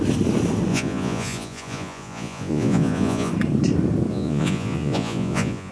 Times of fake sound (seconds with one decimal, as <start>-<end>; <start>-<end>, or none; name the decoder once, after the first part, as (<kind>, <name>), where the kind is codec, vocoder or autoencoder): 0.7-3.3 (vocoder, Vocos); 4.1-5.7